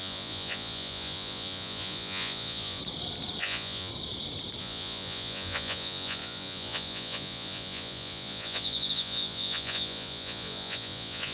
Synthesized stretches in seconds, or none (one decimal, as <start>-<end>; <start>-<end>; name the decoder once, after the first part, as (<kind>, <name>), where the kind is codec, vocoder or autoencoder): 0.0-2.8 (vocoder, Vocos); 3.4-3.9; 4.6-11.3